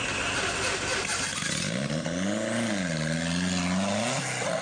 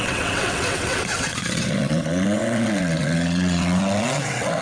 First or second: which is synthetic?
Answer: second